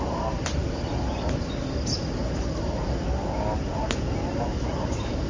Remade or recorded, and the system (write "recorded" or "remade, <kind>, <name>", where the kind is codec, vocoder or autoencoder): recorded